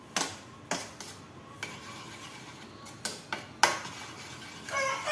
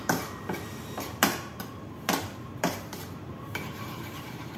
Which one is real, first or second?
first